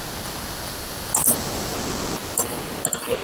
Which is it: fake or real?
real